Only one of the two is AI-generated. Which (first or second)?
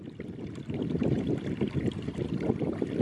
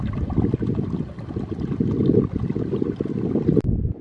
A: first